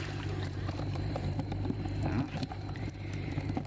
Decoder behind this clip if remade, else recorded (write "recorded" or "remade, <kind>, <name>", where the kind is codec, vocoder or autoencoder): remade, vocoder, BigVGAN v2